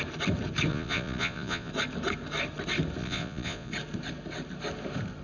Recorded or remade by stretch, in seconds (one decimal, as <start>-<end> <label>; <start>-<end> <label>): 0.0-0.7 recorded; 0.7-1.7 remade; 1.7-3.0 recorded; 3.0-3.7 remade; 3.7-5.2 recorded